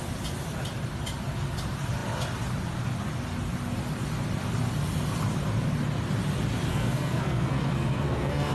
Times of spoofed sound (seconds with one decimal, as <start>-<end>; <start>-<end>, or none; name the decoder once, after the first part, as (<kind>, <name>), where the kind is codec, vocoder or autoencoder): 6.7-8.5 (codec, SNAC)